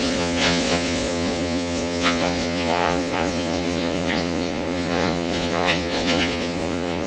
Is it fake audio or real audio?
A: fake